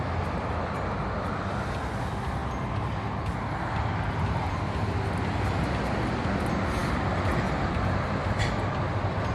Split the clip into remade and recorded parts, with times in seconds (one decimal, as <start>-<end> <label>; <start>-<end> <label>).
0.0-9.3 recorded